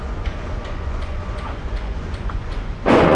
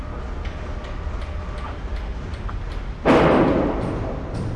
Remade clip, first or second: first